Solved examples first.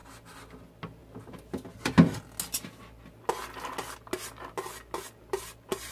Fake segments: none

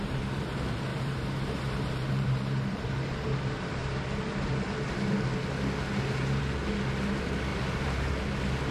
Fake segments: 0.9-2.9 (vocoder, BigVGAN v2); 7.5-8.1

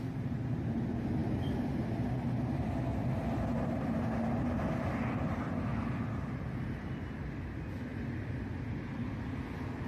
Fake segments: none

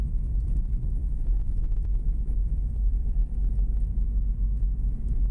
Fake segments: 0.0-3.2 (vocoder, BigVGAN v2)

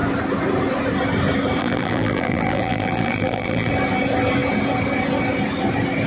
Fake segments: 1.6-3.7 (vocoder, BigVGAN v2)

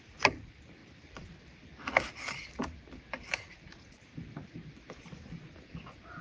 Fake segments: 0.8-2.6 (vocoder, BigVGAN v2)